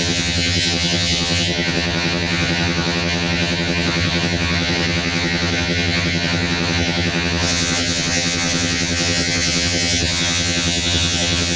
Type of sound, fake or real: fake